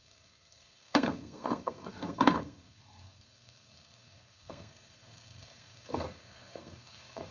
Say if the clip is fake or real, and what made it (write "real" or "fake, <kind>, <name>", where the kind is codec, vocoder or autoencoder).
fake, codec, SNAC